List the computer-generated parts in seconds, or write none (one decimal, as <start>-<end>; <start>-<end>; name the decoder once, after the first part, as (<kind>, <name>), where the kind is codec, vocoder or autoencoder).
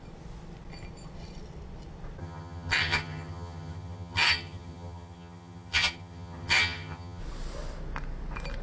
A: 2.2-7.2 (vocoder, HiFi-GAN)